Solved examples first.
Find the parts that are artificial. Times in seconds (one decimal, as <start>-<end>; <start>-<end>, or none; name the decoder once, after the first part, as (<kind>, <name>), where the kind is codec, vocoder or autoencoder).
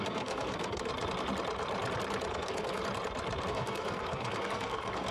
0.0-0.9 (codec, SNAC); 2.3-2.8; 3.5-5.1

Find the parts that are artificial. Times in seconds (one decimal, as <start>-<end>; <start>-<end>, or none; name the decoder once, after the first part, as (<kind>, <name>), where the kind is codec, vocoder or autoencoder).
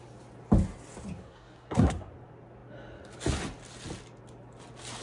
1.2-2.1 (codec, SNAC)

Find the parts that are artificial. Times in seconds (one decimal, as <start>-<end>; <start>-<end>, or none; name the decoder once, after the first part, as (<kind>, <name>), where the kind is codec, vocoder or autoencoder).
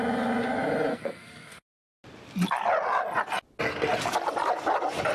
0.9-1.9 (codec, SNAC)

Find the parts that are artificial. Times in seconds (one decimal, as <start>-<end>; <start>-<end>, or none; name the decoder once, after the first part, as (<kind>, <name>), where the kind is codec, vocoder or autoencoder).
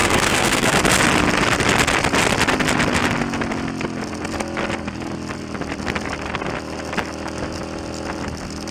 0.0-0.8 (codec, SNAC)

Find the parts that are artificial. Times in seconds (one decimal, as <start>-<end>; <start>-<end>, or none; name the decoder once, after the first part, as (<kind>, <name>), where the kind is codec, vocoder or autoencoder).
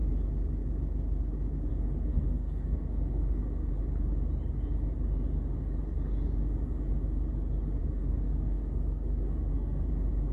2.1-3.7 (codec, SNAC); 7.8-9.9